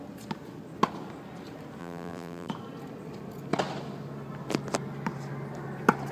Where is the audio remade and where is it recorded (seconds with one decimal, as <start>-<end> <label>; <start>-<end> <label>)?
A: 0.0-1.8 recorded; 1.8-2.5 remade; 2.5-6.1 recorded